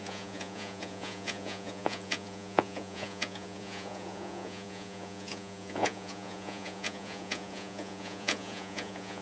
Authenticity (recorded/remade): remade